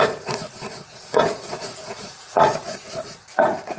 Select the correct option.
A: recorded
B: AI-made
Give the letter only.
B